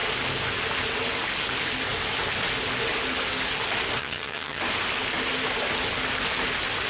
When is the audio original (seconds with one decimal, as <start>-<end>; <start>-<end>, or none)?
0.0-4.0; 4.6-6.9